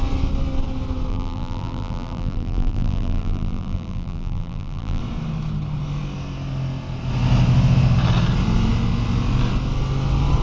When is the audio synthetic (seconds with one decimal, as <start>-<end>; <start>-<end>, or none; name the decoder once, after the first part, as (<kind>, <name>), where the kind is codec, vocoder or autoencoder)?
1.1-5.0 (vocoder, BigVGAN v2)